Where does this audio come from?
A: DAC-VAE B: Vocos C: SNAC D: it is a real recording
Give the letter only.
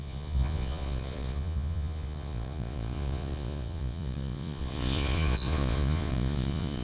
B